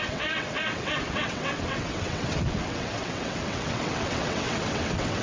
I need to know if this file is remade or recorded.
remade